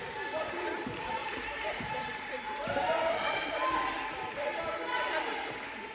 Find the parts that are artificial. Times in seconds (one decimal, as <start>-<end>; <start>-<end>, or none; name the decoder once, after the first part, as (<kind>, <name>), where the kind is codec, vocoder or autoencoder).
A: 1.2-4.6 (vocoder, BigVGAN v2)